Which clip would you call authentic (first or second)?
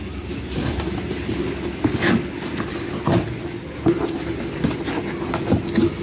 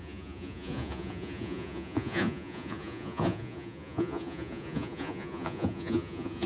first